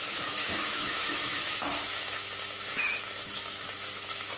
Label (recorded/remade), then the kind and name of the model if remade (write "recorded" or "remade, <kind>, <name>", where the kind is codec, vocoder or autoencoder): remade, autoencoder, DAC-VAE